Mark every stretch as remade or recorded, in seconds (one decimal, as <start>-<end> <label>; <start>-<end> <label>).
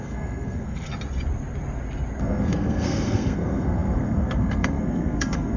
0.0-0.9 remade; 0.9-2.2 recorded; 2.2-5.6 remade